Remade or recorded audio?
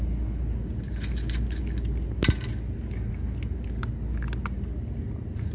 recorded